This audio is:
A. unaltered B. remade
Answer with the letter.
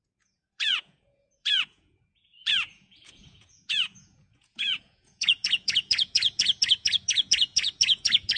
B